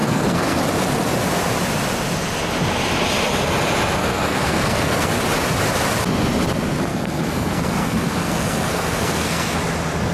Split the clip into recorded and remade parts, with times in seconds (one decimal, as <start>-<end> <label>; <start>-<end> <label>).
0.0-0.6 remade; 0.6-4.0 recorded; 4.0-5.1 remade; 5.1-6.9 recorded; 6.9-9.6 remade; 9.6-10.1 recorded